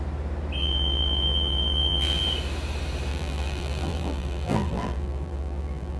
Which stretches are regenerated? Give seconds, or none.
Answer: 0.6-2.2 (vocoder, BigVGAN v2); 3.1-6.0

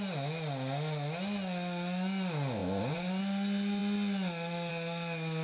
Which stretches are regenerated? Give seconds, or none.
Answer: 2.6-3.2 (vocoder, BigVGAN v2)

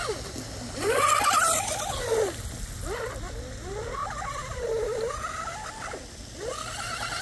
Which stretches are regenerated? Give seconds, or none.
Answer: 4.0-5.3 (vocoder, BigVGAN v2)

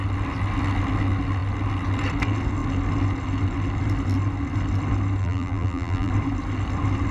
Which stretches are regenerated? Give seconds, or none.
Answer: 5.2-6.1 (vocoder, BigVGAN v2)

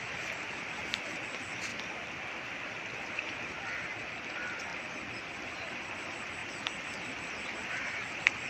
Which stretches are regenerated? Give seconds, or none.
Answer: 1.7-2.9 (vocoder, BigVGAN v2); 4.7-5.9; 6.4-7.7

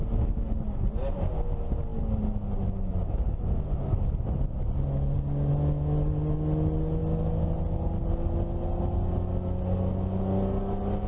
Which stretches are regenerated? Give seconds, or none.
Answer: none